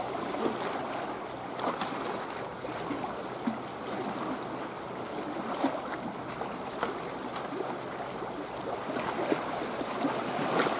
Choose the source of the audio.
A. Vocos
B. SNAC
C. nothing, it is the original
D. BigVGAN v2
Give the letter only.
C